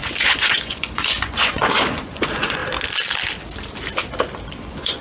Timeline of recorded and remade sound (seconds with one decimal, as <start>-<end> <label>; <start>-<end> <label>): 0.0-2.6 remade; 2.6-4.5 recorded; 4.5-5.0 remade

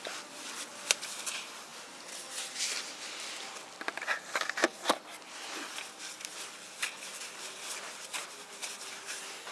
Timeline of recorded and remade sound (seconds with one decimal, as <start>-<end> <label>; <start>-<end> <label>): 0.0-4.6 recorded; 4.6-6.5 remade; 6.5-9.5 recorded

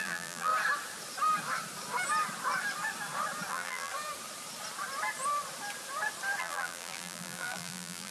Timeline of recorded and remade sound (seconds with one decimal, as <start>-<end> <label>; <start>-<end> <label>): 0.0-0.5 remade; 0.5-3.5 recorded; 3.5-3.9 remade; 3.9-6.4 recorded; 6.4-8.1 remade

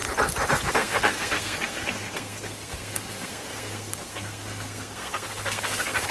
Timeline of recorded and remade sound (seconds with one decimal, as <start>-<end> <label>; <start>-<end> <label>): 0.0-0.7 recorded; 0.7-6.1 remade

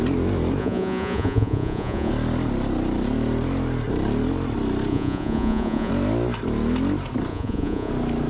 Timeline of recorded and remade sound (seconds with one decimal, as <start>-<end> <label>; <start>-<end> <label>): 0.0-0.6 recorded; 0.6-2.1 remade; 2.1-4.9 recorded; 4.9-5.9 remade; 5.9-7.3 recorded; 7.3-7.9 remade; 7.9-8.3 recorded

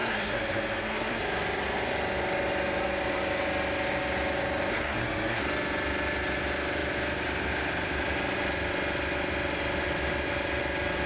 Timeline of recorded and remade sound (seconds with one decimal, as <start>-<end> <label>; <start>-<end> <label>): 0.0-1.2 remade; 1.2-4.7 recorded; 4.7-5.4 remade; 5.4-11.1 recorded